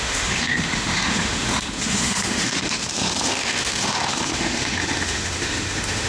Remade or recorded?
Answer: remade